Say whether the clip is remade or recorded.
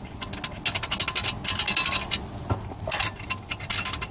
recorded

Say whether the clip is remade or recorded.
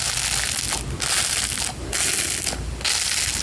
recorded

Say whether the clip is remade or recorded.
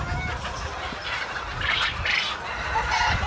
recorded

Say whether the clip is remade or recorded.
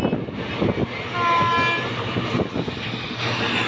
recorded